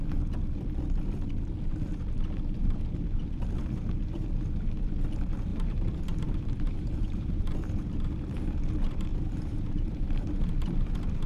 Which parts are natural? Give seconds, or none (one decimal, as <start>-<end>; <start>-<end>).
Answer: 0.0-5.5; 7.4-9.1; 10.3-11.3